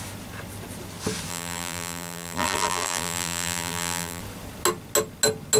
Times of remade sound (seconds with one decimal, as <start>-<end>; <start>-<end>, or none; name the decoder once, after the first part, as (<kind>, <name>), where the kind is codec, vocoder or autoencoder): 1.3-4.2 (vocoder, BigVGAN v2)